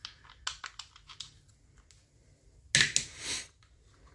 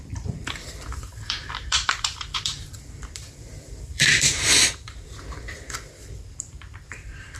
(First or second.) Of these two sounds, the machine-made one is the second